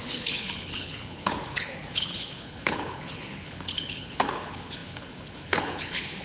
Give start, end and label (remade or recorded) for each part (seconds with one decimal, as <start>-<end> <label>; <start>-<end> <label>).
0.0-6.2 remade